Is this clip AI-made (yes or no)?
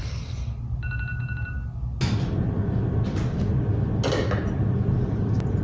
no